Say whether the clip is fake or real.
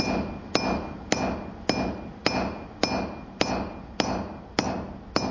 real